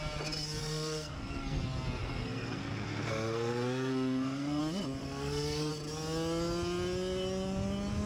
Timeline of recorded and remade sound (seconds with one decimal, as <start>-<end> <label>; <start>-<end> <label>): 0.0-0.6 recorded; 0.6-1.6 remade; 1.6-2.0 recorded; 2.0-4.6 remade; 4.6-5.0 recorded; 5.0-5.7 remade; 5.7-8.1 recorded